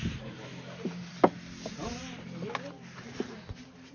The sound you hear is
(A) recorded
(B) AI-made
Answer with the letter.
A